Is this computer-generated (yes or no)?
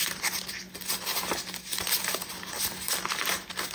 no